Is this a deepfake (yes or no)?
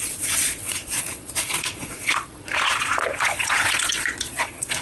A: yes